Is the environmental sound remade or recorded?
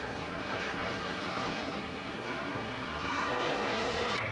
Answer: remade